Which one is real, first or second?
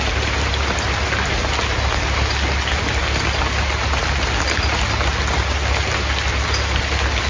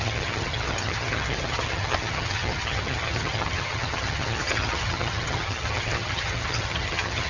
first